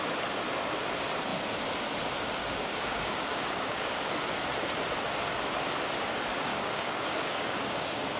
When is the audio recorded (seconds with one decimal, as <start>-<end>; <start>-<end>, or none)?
0.0-2.4; 4.1-6.5